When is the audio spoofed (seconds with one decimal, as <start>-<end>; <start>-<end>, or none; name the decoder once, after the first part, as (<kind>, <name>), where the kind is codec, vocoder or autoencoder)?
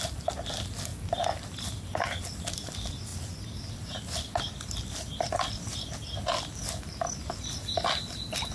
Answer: none